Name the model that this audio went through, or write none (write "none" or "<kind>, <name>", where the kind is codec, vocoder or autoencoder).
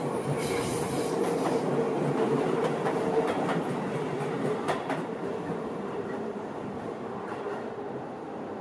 none